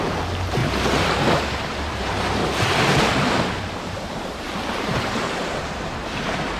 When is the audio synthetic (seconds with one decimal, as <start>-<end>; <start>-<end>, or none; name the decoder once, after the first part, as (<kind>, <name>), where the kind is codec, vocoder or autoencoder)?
0.0-0.6 (vocoder, BigVGAN v2); 1.2-2.4; 3.0-6.6